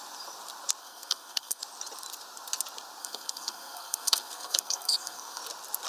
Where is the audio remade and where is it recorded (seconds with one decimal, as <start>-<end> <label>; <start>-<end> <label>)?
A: 0.0-0.8 recorded; 0.8-1.6 remade; 1.6-3.0 recorded; 3.0-5.4 remade; 5.4-5.9 recorded